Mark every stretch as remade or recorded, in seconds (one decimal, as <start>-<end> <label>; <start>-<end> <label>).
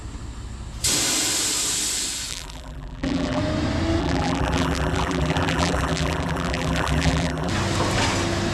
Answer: 0.0-2.3 recorded; 2.3-3.4 remade; 3.4-4.0 recorded; 4.0-7.5 remade; 7.5-8.5 recorded